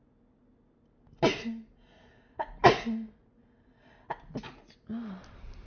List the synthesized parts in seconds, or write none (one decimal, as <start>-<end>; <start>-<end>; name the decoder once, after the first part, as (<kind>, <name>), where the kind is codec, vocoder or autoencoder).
none